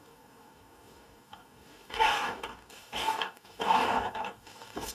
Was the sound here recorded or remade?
remade